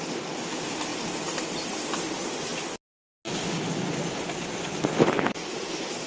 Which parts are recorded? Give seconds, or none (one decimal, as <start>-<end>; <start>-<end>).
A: 0.9-1.4; 2.5-4.3; 4.7-6.1